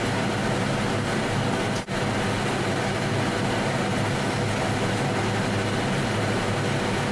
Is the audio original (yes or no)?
yes